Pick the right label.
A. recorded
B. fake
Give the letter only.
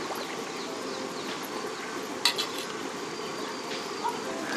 A